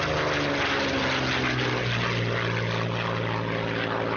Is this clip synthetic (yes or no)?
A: no